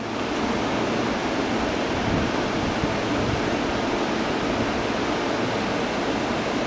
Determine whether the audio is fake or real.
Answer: real